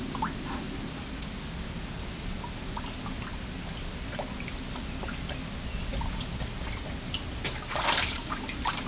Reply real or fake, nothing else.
real